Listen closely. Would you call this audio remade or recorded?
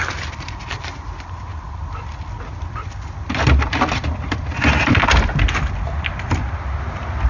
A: recorded